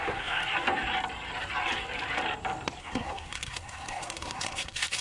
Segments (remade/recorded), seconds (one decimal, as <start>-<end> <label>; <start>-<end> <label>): 0.0-0.4 remade; 0.4-2.8 recorded; 2.8-5.0 remade

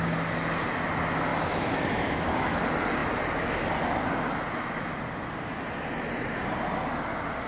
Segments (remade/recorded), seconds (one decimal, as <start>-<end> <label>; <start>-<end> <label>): 0.0-1.3 recorded; 1.3-2.6 remade; 2.6-7.5 recorded

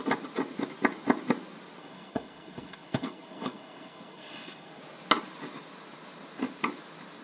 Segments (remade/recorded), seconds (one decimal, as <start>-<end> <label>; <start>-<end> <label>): 0.0-1.8 recorded; 1.8-4.8 remade; 4.8-7.2 recorded

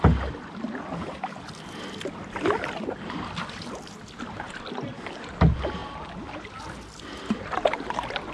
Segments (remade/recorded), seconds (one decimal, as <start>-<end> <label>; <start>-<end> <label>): 0.0-8.3 recorded

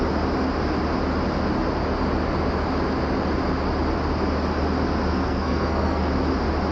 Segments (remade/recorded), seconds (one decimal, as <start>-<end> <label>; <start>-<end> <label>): 0.0-5.1 recorded; 5.1-6.1 remade; 6.1-6.7 recorded